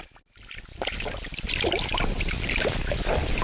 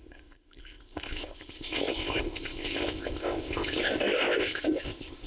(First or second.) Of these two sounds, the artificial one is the second